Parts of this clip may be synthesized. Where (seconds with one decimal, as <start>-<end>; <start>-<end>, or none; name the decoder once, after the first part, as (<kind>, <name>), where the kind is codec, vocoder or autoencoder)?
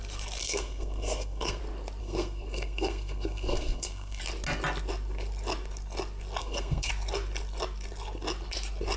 0.4-1.6 (codec, SNAC); 2.0-4.2; 6.4-6.9